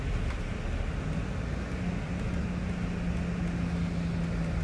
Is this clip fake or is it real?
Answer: real